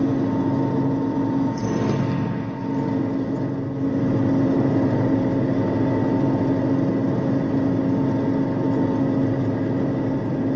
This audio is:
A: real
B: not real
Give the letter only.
A